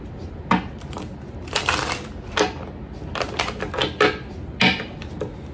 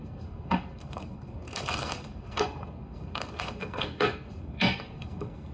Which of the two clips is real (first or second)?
first